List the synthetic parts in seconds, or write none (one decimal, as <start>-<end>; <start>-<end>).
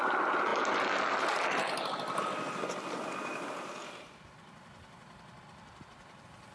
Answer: none